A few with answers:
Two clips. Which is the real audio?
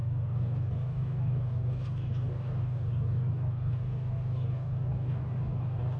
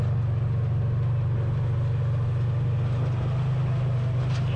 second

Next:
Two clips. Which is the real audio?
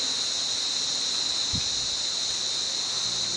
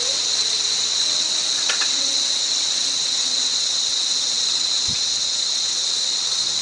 first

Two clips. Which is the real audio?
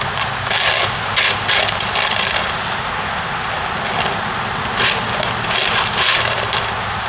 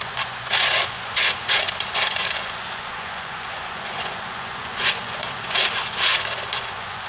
first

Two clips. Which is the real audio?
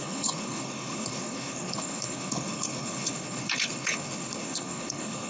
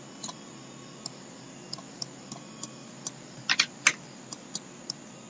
second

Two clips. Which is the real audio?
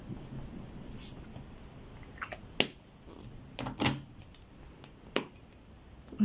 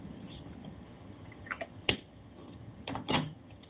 first